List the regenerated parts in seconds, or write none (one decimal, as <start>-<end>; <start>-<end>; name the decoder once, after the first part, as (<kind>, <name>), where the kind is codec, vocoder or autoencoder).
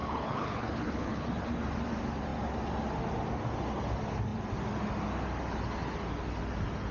0.0-1.3 (codec, HILCodec)